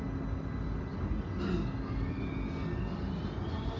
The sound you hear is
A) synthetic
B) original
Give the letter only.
B